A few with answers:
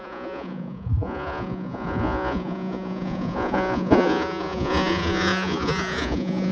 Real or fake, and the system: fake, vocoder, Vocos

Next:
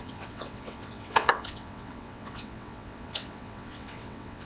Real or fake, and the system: fake, vocoder, WaveNeXt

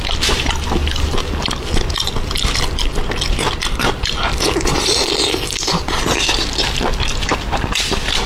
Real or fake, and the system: real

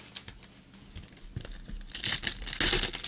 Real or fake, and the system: real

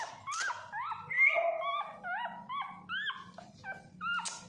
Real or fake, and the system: real